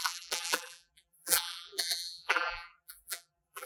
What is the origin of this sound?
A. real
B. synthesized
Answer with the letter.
B